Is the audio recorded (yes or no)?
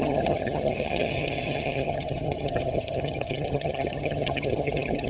no